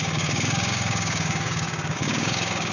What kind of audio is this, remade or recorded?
remade